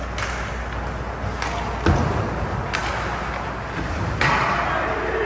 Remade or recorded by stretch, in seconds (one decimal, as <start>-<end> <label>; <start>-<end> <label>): 0.0-5.3 recorded